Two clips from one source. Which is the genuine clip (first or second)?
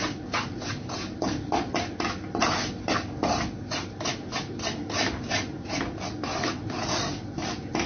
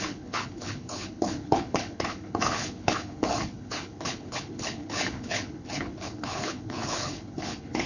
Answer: first